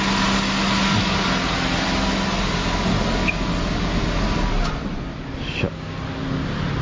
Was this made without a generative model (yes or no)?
yes